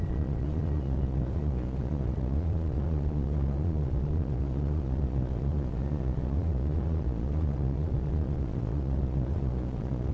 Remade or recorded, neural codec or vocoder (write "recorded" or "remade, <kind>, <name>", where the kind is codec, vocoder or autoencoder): remade, vocoder, Vocos